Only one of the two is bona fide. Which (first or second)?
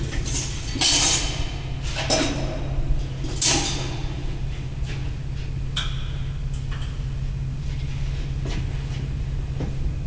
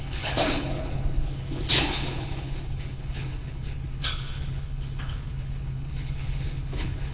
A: first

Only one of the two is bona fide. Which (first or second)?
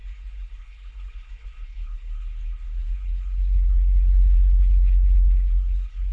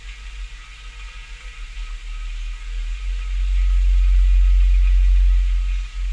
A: second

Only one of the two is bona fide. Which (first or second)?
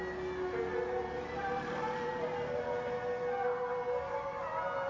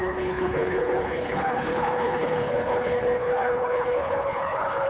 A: first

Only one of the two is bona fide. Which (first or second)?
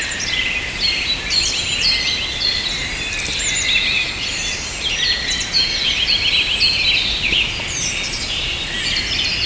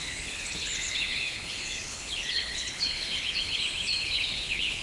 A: first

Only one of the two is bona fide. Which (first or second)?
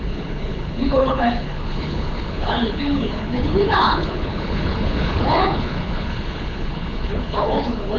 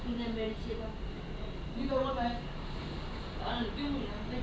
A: second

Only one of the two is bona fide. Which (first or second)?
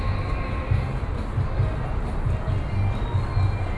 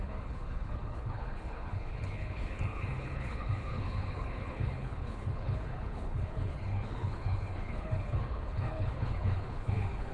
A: first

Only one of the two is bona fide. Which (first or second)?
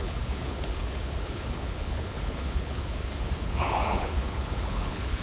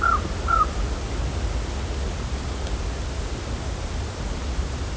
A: second